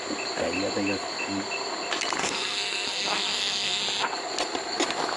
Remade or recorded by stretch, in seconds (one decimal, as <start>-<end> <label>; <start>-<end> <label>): 0.0-2.2 recorded; 2.2-3.8 remade; 3.8-5.2 recorded